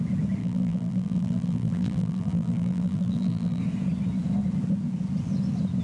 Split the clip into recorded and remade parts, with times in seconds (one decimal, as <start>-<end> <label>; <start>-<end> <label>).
0.0-0.4 recorded; 0.4-3.6 remade; 3.6-5.8 recorded